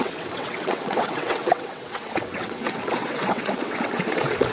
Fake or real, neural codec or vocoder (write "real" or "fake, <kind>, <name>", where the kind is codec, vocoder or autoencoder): fake, vocoder, WaveNeXt